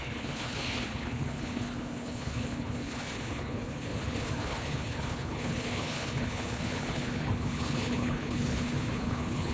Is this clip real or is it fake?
fake